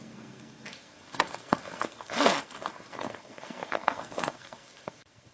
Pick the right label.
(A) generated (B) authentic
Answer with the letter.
A